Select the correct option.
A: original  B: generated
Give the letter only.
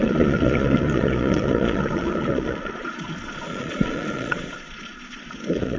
B